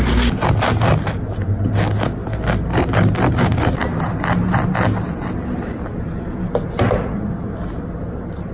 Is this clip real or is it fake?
real